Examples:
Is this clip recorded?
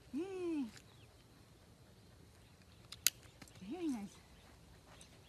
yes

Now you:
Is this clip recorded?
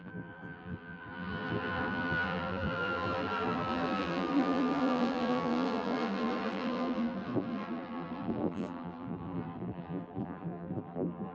no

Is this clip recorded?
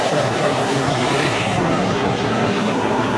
no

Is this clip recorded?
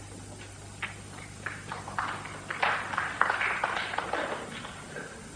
yes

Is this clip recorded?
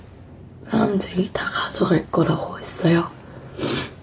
yes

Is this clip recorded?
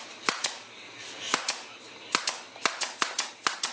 yes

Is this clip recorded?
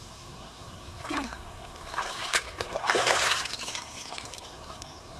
no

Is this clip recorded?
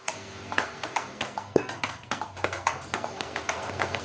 no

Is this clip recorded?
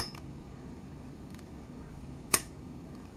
no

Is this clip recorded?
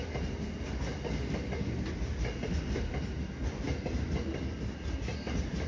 yes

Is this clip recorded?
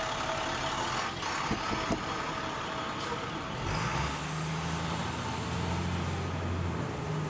yes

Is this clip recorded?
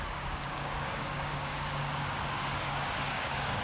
no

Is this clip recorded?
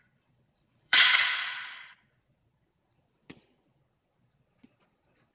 no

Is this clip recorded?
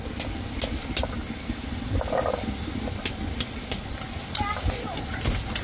yes